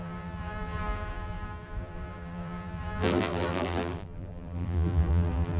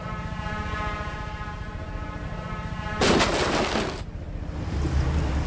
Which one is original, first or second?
second